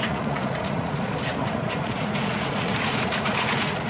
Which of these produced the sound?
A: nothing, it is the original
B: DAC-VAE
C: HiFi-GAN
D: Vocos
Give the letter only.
D